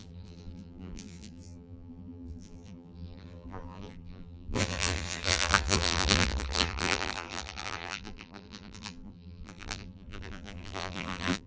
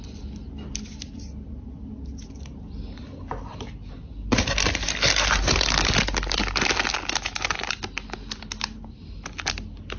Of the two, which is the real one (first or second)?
second